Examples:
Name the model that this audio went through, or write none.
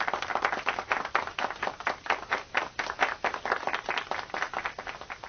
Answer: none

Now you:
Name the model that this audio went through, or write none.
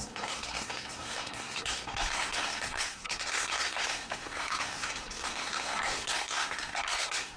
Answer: codec, SNAC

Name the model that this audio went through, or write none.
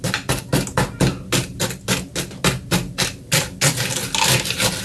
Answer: none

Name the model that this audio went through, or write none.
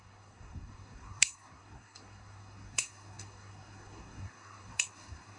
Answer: codec, SNAC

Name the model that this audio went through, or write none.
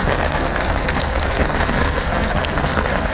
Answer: codec, SNAC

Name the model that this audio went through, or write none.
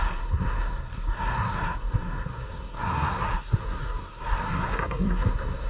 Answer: codec, SNAC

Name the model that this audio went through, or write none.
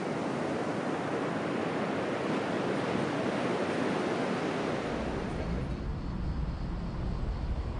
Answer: none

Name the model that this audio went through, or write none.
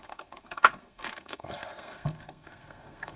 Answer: codec, SNAC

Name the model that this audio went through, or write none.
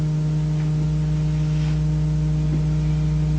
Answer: none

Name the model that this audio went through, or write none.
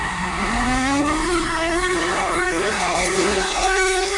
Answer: codec, SNAC